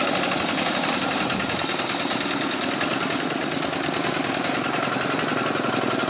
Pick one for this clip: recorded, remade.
recorded